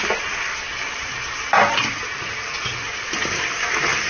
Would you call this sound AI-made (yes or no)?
no